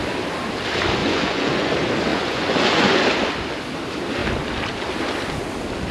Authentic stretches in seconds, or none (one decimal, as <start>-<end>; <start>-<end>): 0.0-1.0; 1.7-2.1; 3.0-5.9